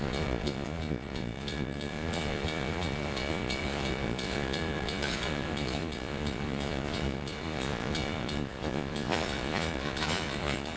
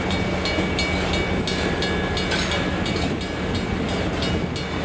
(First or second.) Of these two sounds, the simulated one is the first